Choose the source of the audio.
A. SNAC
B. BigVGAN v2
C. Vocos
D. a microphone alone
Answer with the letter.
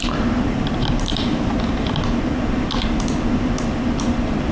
D